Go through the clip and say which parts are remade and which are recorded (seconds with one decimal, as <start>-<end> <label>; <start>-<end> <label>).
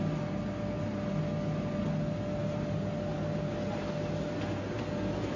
0.0-5.4 recorded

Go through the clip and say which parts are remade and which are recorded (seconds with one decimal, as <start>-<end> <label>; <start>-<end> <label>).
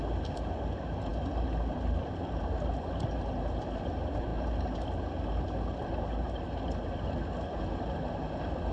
0.0-8.7 recorded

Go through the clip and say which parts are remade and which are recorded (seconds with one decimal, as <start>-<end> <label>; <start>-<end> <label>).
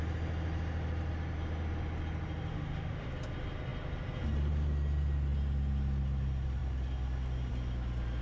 0.0-2.5 recorded; 2.5-3.1 remade; 3.1-8.2 recorded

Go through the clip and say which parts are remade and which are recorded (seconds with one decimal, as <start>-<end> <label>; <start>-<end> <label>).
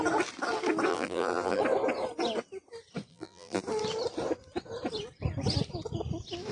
0.0-0.9 recorded; 0.9-1.6 remade; 1.6-3.1 recorded; 3.1-3.6 remade; 3.6-6.5 recorded